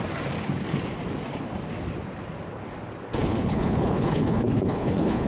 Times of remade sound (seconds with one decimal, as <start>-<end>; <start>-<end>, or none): 3.2-5.3